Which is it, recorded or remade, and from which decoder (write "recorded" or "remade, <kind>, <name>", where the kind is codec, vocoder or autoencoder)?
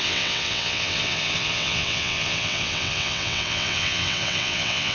remade, vocoder, WaveNeXt